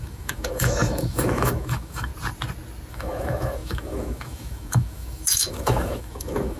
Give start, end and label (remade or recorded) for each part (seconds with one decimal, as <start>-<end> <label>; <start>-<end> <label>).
0.0-2.1 remade; 2.1-2.9 recorded; 2.9-6.6 remade